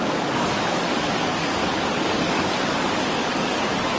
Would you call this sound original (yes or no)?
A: no